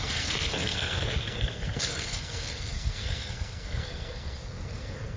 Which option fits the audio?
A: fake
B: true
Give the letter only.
A